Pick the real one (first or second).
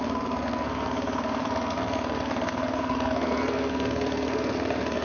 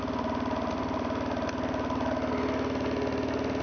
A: second